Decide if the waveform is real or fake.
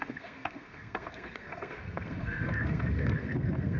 fake